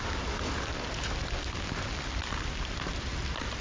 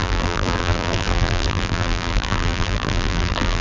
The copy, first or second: second